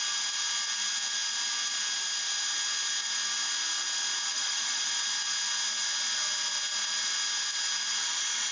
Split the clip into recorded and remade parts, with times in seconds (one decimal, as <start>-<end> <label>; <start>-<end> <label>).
0.0-4.3 recorded; 4.3-4.9 remade; 4.9-8.5 recorded

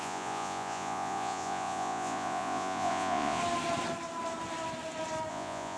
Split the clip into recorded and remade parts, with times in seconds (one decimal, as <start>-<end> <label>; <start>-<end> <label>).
0.0-3.4 remade; 3.4-5.3 recorded; 5.3-5.8 remade

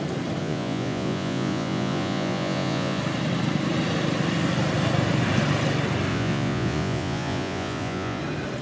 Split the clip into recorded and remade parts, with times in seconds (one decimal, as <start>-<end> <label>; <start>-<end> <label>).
0.0-0.4 recorded; 0.4-3.0 remade; 3.0-6.1 recorded; 6.1-8.2 remade; 8.2-8.6 recorded

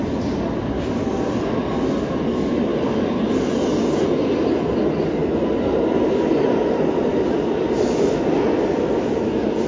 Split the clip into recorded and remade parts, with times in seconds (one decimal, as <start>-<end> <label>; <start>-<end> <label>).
0.0-9.7 recorded

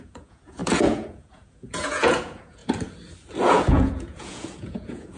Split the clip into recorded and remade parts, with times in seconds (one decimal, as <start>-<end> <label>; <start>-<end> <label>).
0.0-2.6 remade; 2.6-3.5 recorded; 3.5-5.2 remade